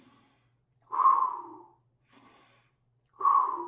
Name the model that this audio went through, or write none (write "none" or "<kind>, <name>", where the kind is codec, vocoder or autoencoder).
none